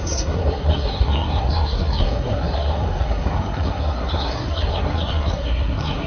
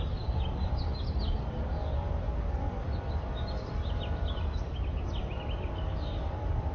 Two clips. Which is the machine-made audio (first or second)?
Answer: first